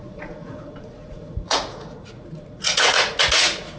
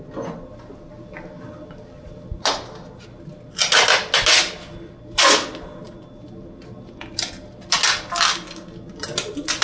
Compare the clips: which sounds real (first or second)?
second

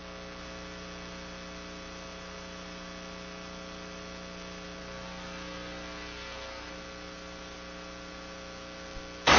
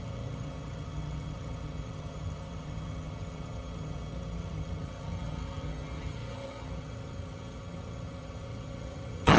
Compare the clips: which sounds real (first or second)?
first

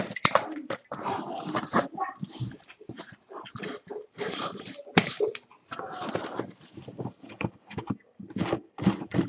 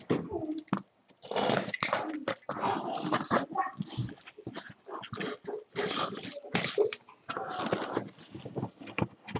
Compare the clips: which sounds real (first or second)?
second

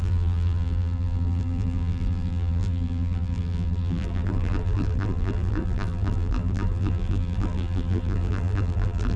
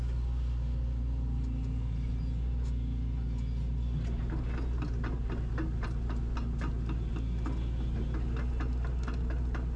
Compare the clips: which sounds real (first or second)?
second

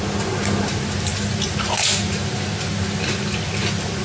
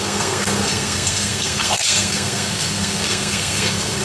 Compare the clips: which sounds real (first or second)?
first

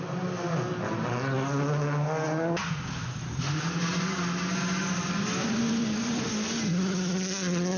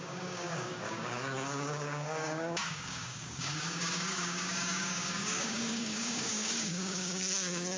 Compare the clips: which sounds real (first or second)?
first